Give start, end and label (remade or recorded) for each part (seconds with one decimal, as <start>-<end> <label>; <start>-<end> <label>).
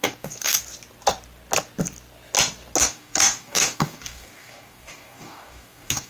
0.0-0.6 remade; 0.6-2.8 recorded; 2.8-6.1 remade